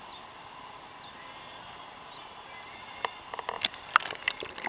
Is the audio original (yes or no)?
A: yes